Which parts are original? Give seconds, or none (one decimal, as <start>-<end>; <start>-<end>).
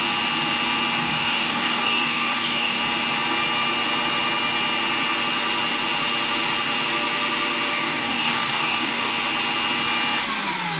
0.0-1.0; 2.8-7.7; 9.1-10.8